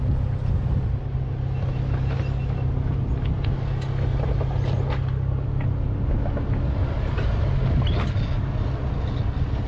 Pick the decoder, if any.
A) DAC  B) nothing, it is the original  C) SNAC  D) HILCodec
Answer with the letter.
B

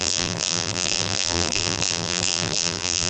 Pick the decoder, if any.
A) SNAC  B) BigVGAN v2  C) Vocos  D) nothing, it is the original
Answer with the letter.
B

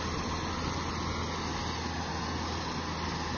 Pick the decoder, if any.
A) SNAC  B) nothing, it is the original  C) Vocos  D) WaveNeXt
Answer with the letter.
B